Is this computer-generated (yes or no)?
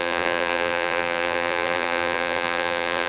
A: yes